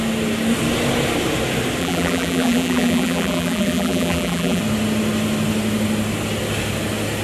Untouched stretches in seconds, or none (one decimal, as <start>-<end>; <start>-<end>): 0.0-1.8; 4.6-7.2